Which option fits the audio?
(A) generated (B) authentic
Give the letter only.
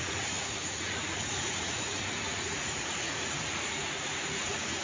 A